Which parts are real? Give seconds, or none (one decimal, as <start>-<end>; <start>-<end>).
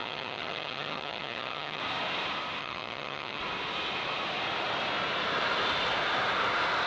1.8-2.6; 3.4-6.9